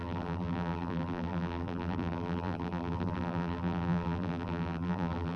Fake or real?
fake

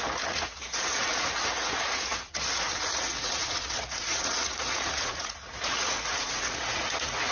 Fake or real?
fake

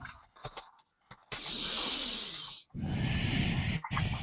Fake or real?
real